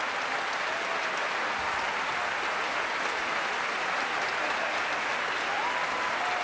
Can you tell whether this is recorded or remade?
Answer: recorded